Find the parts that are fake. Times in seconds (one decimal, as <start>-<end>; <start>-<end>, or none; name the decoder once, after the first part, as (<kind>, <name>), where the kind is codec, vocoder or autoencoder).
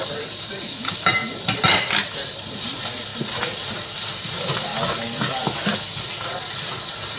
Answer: 0.0-1.2 (vocoder, BigVGAN v2); 2.2-4.7; 6.2-7.2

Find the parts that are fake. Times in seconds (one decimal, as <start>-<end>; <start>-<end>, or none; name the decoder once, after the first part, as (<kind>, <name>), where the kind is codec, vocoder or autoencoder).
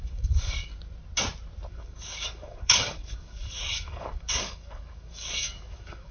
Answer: 0.0-0.7 (codec, DAC); 1.7-6.1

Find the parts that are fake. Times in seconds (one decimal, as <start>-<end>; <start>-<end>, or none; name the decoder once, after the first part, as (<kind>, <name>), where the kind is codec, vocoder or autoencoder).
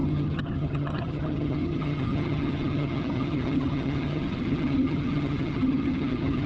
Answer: 0.0-6.5 (vocoder, HiFi-GAN)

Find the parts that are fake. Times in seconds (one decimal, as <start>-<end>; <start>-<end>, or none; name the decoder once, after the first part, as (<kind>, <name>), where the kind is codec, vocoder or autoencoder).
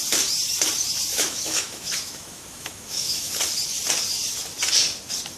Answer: 1.1-3.3 (autoencoder, DAC-VAE)